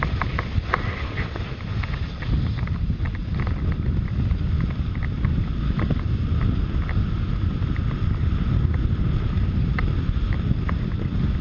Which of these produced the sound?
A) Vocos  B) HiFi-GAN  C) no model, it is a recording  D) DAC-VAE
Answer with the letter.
C